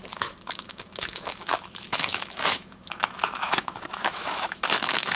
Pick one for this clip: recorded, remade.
remade